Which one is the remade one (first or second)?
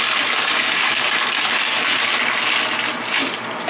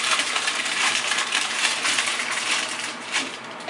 second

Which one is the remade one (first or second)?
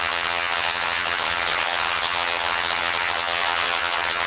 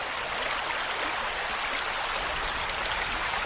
first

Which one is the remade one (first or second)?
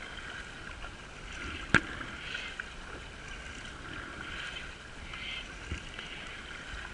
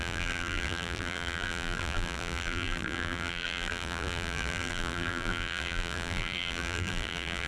second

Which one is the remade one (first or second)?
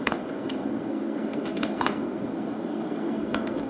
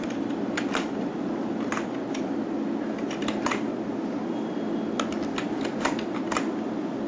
first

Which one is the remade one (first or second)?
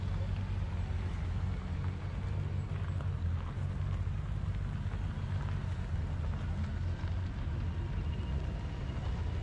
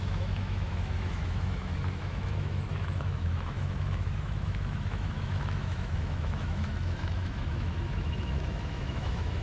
second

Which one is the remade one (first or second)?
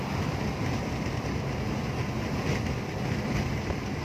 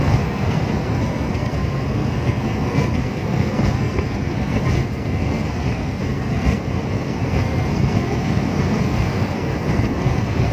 second